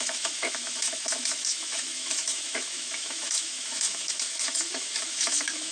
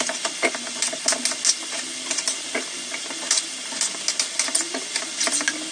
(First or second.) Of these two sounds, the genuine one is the second